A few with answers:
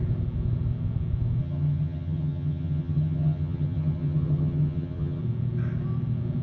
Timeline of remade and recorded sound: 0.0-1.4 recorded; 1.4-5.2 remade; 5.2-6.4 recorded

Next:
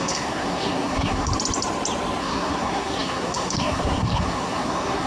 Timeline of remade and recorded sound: 0.0-1.3 remade; 1.3-2.2 recorded; 2.2-5.1 remade

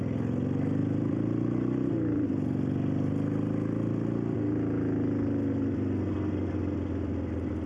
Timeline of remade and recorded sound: 0.0-0.8 recorded; 0.8-3.1 remade; 3.1-7.7 recorded

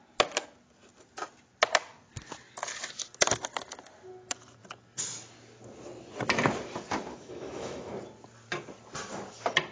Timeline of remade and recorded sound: 0.0-7.1 recorded; 7.1-7.9 remade; 7.9-9.7 recorded

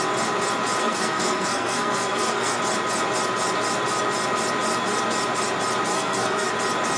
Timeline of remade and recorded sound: 0.0-0.8 recorded; 0.8-2.6 remade; 2.6-5.9 recorded; 5.9-6.5 remade; 6.5-7.0 recorded

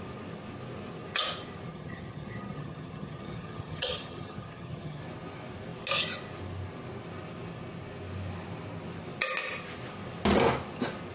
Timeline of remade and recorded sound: 0.0-1.7 recorded; 1.7-5.0 remade; 5.0-11.1 recorded

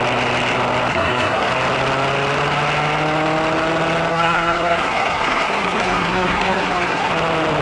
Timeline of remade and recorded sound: 0.0-0.9 recorded; 0.9-1.5 remade; 1.5-4.1 recorded; 4.1-7.1 remade; 7.1-7.6 recorded